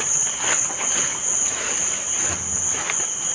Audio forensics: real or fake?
real